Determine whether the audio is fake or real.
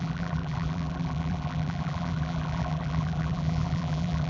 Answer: fake